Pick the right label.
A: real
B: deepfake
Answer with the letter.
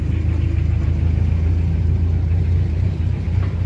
A